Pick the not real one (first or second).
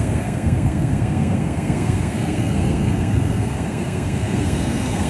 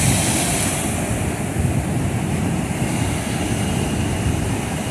first